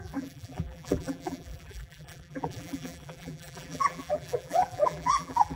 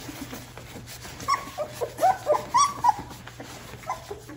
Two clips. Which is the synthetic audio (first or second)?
first